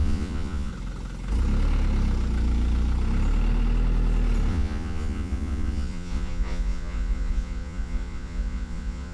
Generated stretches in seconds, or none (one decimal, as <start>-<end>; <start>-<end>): 0.0-0.7; 4.5-9.1